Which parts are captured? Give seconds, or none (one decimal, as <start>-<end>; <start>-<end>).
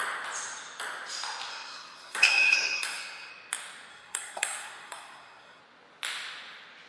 0.0-1.5; 3.3-3.9; 5.6-6.9